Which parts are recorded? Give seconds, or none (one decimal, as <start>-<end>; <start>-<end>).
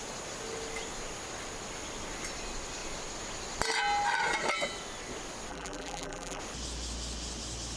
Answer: 0.0-5.5; 6.4-7.8